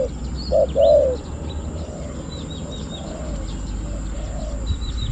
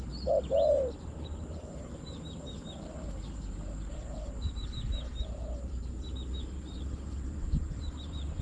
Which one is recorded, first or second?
first